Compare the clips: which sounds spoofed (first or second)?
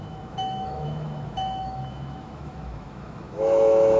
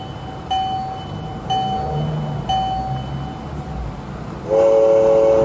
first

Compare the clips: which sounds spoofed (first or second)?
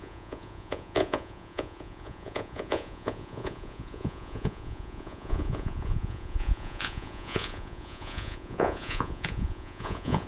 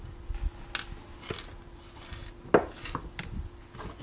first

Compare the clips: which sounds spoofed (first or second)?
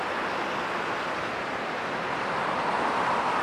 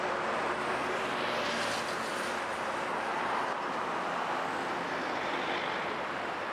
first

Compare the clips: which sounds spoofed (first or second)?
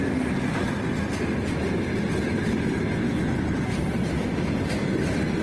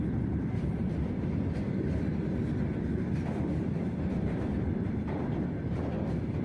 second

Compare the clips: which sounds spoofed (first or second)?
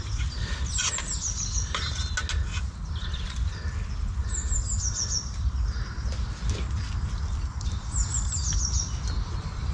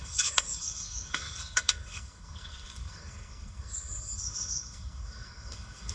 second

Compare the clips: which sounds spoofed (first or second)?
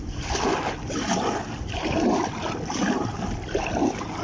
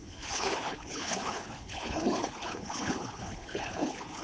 second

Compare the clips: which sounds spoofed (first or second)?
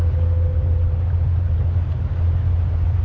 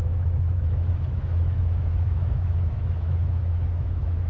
second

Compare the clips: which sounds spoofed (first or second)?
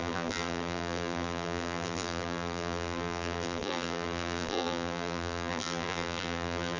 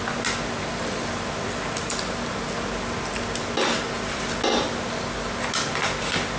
first